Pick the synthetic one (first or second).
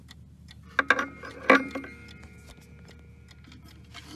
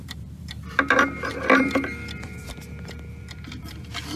second